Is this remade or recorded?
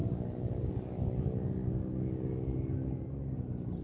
recorded